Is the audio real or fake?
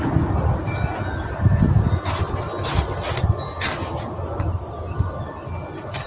real